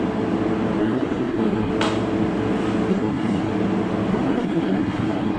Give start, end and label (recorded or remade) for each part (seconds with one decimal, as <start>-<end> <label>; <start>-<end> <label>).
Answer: 0.0-0.8 recorded; 0.8-1.7 remade; 1.7-2.9 recorded; 2.9-3.5 remade; 3.5-4.1 recorded; 4.1-5.4 remade